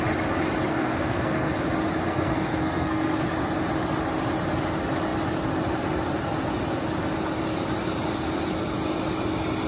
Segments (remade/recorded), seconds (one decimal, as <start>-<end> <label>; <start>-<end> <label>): 0.0-0.7 recorded; 0.7-1.5 remade; 1.5-2.0 recorded; 2.0-3.2 remade; 3.2-9.7 recorded